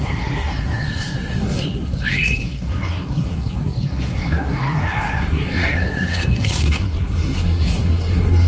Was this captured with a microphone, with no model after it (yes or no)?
no